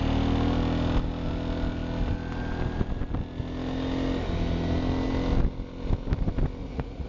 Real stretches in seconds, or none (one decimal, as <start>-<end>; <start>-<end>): 0.0-6.6